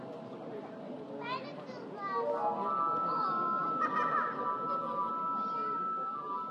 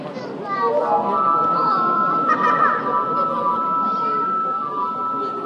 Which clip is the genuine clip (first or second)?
first